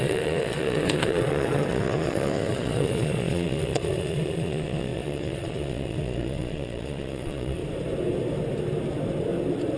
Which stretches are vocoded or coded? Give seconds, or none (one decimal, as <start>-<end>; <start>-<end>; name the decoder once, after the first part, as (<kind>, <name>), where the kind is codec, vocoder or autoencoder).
0.0-7.6 (vocoder, Vocos)